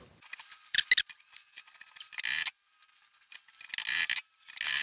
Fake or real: real